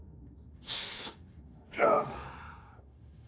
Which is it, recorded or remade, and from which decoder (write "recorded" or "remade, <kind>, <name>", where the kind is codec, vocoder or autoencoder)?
remade, autoencoder, DAC-VAE